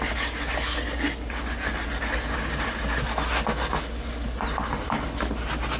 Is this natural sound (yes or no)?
yes